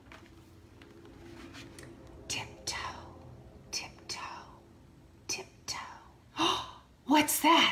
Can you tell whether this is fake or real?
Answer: real